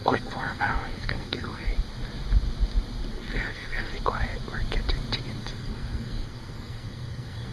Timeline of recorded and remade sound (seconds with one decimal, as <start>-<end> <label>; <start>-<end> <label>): 0.0-1.7 remade; 1.7-3.1 recorded; 3.1-3.9 remade; 3.9-5.4 recorded; 5.4-7.5 remade